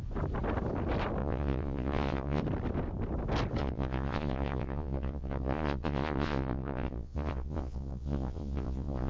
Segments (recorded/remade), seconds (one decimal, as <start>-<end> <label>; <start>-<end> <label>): 0.0-1.2 recorded; 1.2-2.4 remade; 2.4-3.6 recorded; 3.6-9.1 remade